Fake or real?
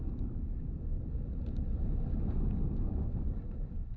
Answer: real